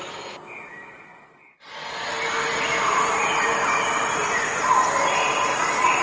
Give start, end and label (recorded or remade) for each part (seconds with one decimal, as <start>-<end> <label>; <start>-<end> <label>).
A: 0.0-0.8 recorded; 0.8-2.1 remade; 2.1-6.0 recorded